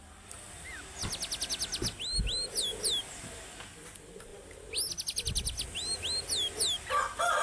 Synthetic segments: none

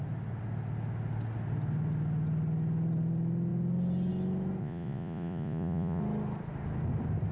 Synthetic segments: 4.6-6.0 (vocoder, Vocos)

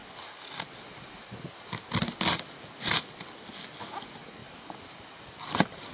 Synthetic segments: none